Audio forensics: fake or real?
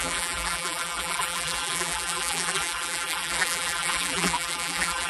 fake